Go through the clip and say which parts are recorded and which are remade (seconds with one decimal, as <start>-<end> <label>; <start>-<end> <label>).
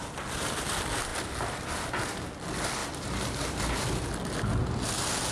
0.0-2.8 recorded; 2.8-3.9 remade; 3.9-5.3 recorded